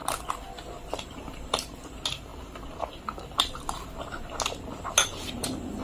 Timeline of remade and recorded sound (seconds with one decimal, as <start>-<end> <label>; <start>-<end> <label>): 0.0-5.8 recorded